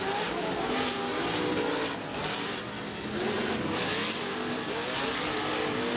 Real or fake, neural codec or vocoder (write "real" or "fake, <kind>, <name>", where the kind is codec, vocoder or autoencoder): real